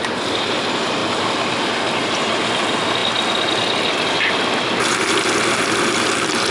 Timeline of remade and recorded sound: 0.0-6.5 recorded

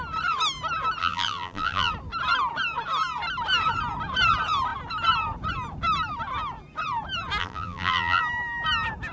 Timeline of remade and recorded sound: 0.0-1.0 recorded; 1.0-1.9 remade; 1.9-7.4 recorded; 7.4-8.2 remade; 8.2-9.1 recorded

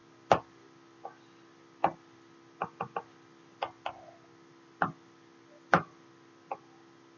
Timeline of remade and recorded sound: 0.0-7.2 recorded

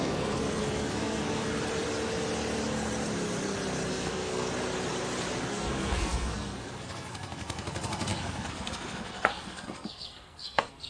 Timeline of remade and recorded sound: 0.0-1.5 remade; 1.5-3.9 recorded; 3.9-4.5 remade; 4.5-5.5 recorded; 5.5-10.9 remade

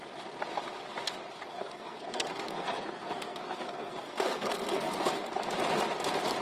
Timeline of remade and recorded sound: 0.0-1.5 recorded; 1.5-5.3 remade; 5.3-6.4 recorded

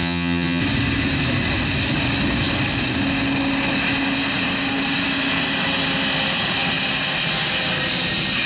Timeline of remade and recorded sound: 0.0-0.6 remade; 0.6-8.5 recorded

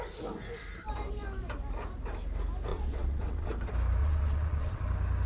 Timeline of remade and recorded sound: 0.0-2.7 recorded; 2.7-3.5 remade; 3.5-4.0 recorded; 4.0-4.8 remade; 4.8-5.3 recorded